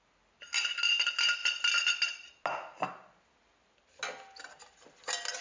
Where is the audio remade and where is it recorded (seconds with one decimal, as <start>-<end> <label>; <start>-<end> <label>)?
0.0-5.4 recorded